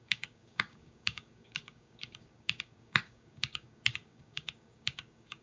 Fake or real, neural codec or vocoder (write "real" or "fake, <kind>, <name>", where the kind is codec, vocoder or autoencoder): fake, codec, DAC